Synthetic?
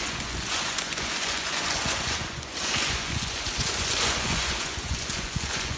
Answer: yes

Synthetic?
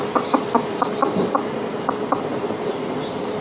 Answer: no